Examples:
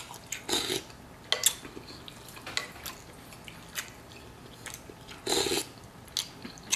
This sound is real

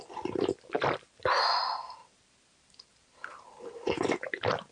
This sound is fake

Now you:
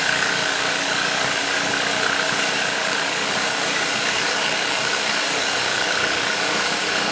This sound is fake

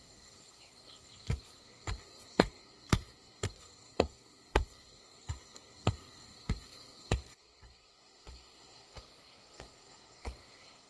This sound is fake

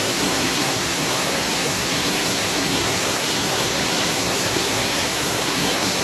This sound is fake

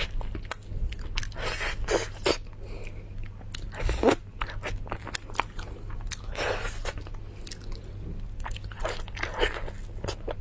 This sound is real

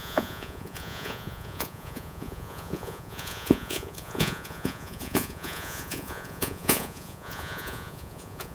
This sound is fake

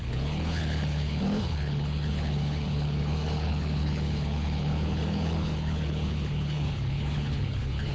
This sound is fake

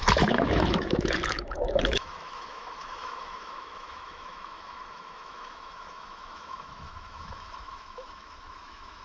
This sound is fake